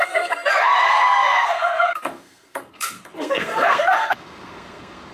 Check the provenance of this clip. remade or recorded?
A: remade